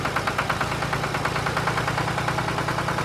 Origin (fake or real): real